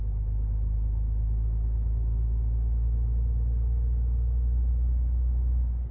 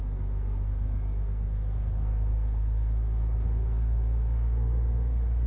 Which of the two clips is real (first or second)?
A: first